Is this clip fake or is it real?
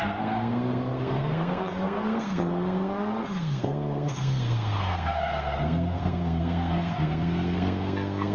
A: fake